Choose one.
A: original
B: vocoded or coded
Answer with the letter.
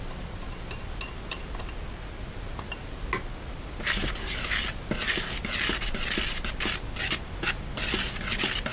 A